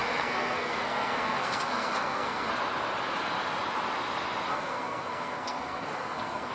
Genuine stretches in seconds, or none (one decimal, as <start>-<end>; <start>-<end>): 2.5-4.5